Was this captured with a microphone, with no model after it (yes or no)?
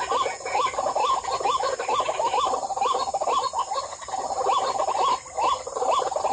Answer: yes